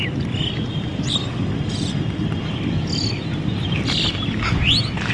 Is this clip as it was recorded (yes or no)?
yes